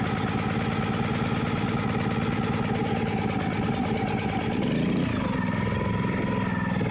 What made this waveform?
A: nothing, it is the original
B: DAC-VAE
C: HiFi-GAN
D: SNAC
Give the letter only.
A